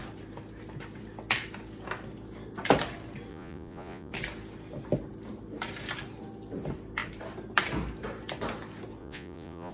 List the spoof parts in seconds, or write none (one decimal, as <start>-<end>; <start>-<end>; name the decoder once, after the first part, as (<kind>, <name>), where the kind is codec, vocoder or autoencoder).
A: 3.3-4.1 (vocoder, Vocos); 9.0-9.7